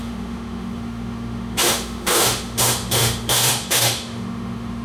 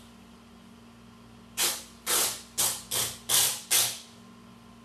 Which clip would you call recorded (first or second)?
second